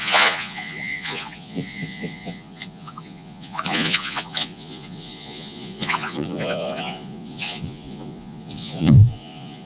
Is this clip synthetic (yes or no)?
yes